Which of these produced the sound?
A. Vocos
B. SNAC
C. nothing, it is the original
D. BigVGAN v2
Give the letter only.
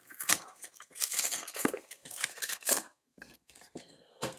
B